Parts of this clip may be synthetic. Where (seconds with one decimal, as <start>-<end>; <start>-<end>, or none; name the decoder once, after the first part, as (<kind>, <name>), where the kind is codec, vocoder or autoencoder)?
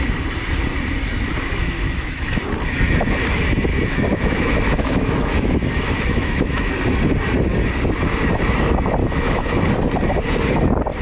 1.6-2.4 (autoencoder, DAC-VAE); 3.7-6.7; 9.0-9.6